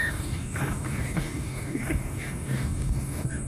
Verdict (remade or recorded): remade